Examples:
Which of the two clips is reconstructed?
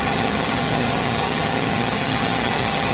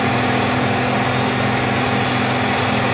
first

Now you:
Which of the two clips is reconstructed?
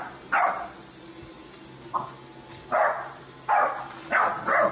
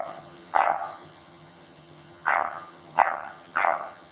second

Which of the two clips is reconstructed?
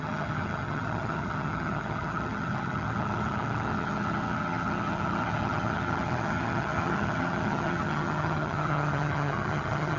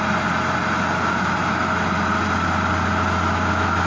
first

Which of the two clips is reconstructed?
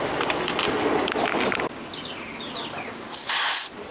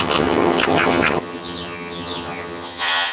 second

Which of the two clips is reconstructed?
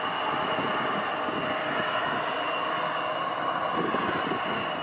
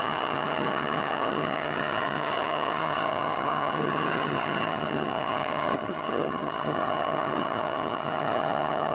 second